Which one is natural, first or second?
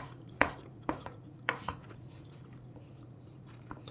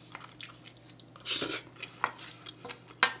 second